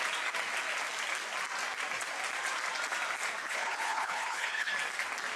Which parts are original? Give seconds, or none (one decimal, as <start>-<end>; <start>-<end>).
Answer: 0.0-3.4; 4.7-5.4